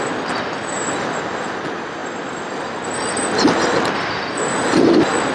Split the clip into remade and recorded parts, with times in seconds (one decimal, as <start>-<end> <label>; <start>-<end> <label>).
0.0-5.3 recorded